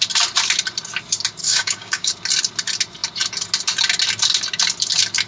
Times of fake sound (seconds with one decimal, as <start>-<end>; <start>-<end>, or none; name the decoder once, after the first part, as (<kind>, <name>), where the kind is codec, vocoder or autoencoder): 1.4-2.1 (codec, DAC)